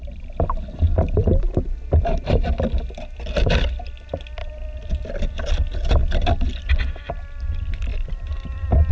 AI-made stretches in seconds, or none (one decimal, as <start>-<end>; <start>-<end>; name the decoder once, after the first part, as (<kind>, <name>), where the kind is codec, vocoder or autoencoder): 1.2-3.3 (vocoder, BigVGAN v2); 4.4-5.2